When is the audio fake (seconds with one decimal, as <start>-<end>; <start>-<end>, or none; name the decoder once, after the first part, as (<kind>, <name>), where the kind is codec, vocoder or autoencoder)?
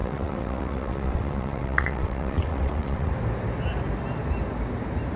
0.0-3.1 (vocoder, WaveNeXt)